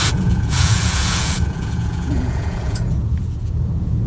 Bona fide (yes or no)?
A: no